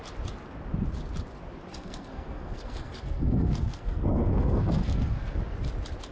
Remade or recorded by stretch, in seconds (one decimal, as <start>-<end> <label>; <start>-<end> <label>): 0.0-1.7 recorded; 1.7-5.4 remade; 5.4-6.1 recorded